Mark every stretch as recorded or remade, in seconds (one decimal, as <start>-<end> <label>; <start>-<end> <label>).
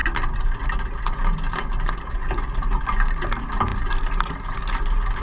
0.0-3.7 recorded; 3.7-4.3 remade; 4.3-5.2 recorded